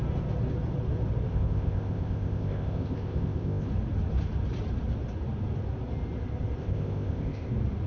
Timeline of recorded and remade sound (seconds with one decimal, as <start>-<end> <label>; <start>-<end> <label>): 0.0-1.3 recorded; 1.3-3.7 remade; 3.7-6.6 recorded; 6.6-7.5 remade; 7.5-7.9 recorded